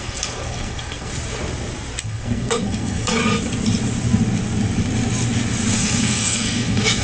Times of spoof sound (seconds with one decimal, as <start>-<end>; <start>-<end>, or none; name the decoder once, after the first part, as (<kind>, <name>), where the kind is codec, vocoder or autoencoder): 0.0-1.1 (codec, SNAC); 2.0-3.2; 5.7-7.0